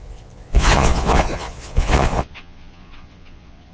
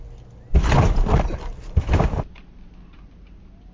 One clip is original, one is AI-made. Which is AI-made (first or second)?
first